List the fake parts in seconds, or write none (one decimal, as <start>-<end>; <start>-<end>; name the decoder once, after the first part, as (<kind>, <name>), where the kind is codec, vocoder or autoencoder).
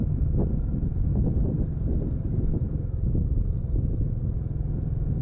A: none